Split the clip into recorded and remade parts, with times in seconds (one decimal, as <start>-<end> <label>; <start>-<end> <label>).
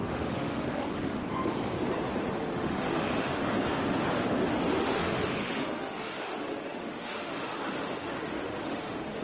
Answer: 0.0-1.2 remade; 1.2-2.3 recorded; 2.3-3.4 remade; 3.4-4.8 recorded; 4.8-9.2 remade